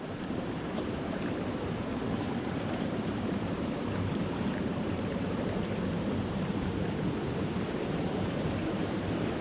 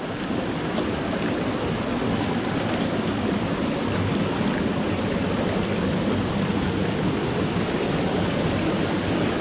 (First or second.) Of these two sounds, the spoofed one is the first